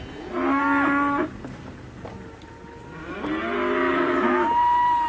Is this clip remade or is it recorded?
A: recorded